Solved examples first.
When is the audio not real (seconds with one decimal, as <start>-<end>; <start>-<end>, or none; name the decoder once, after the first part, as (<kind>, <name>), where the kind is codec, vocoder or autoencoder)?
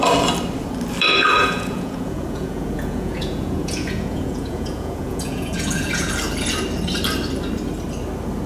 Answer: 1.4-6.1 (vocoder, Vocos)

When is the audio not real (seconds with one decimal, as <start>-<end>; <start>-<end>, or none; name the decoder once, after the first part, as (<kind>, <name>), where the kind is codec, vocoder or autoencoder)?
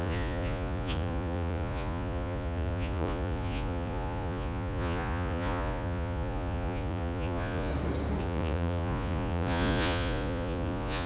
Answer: 0.0-7.7 (vocoder, Vocos); 8.2-11.1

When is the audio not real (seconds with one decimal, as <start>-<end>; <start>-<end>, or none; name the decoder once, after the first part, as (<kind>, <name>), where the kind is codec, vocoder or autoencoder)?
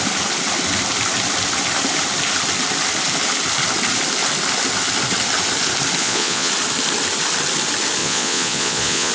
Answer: 6.0-6.5 (vocoder, Vocos); 8.0-9.1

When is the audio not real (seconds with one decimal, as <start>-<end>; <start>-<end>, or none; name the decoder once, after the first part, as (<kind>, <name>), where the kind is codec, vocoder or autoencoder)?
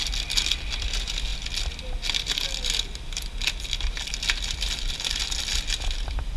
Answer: none